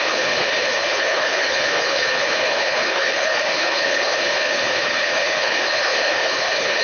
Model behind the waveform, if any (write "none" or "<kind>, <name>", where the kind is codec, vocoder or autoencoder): codec, HILCodec